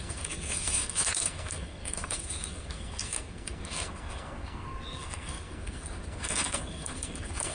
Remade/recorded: remade